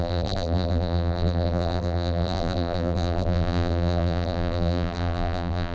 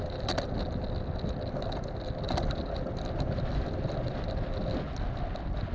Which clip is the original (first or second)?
second